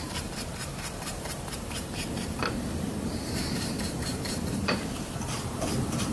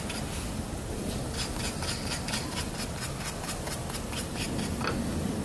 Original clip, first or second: second